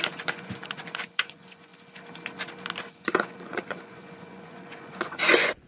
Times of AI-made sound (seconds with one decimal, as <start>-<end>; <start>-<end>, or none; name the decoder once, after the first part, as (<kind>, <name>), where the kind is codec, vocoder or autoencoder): 0.0-1.7 (vocoder, Vocos); 2.8-5.7